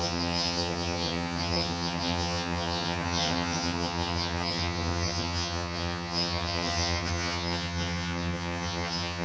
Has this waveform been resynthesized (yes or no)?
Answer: yes